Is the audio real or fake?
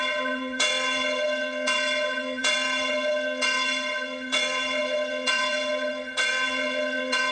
fake